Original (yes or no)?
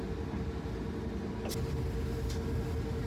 yes